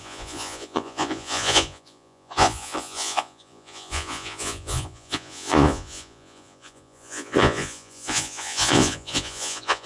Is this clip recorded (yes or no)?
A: no